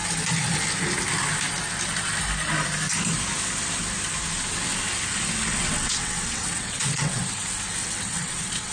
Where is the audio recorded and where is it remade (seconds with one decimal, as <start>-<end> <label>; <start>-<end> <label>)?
0.0-5.7 recorded; 5.7-7.2 remade; 7.2-7.8 recorded; 7.8-8.7 remade